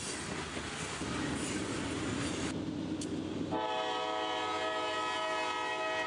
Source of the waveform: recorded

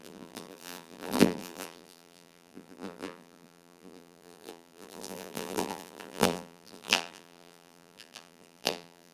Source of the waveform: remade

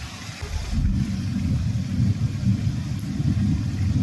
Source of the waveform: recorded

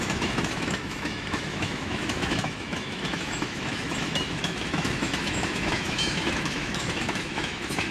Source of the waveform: remade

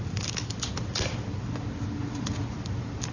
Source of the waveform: recorded